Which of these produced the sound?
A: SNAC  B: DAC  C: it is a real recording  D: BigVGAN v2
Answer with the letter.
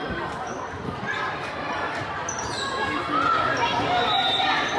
C